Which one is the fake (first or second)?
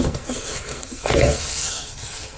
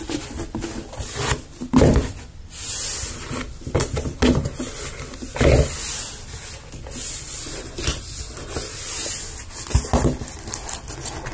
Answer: first